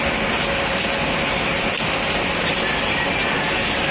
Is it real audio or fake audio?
real